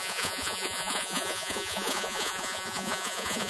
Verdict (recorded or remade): remade